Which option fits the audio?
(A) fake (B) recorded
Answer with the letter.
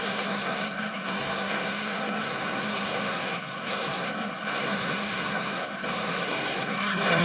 A